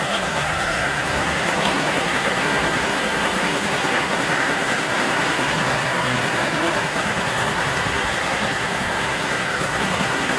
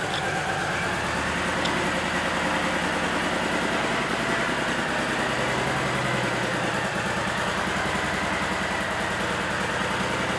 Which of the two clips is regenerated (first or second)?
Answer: first